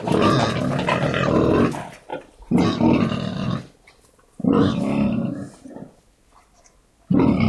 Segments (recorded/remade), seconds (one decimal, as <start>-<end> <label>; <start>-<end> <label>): 0.0-7.5 recorded